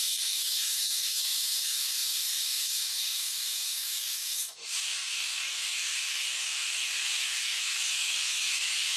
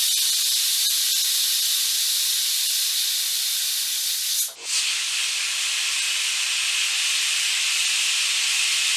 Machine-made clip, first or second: first